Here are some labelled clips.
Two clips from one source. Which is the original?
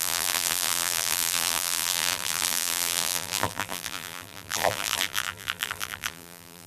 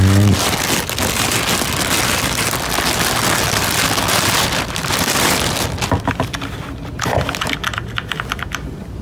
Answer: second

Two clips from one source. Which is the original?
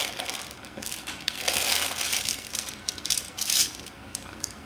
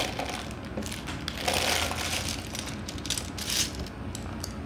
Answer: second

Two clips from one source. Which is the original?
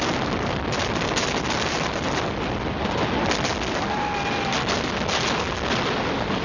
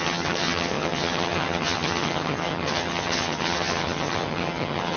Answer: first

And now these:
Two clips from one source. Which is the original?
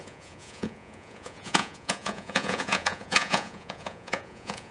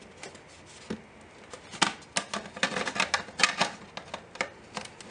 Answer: second